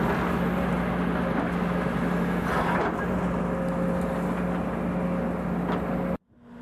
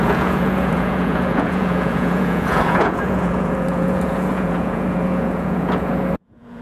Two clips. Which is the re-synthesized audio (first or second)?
second